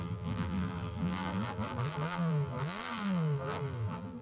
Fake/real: fake